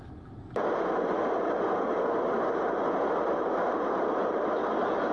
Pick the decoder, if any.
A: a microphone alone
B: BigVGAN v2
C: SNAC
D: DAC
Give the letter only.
A